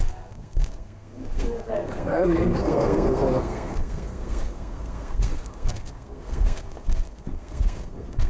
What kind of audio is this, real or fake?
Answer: fake